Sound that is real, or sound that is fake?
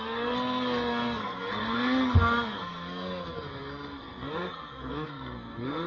fake